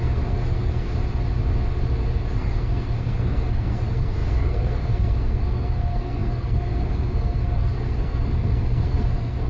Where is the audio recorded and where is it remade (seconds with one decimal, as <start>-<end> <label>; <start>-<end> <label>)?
0.0-0.9 remade; 0.9-2.4 recorded; 2.4-9.5 remade